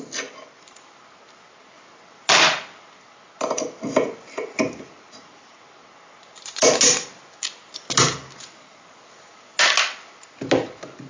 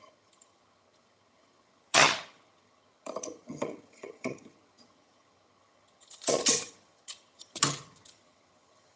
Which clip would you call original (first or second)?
first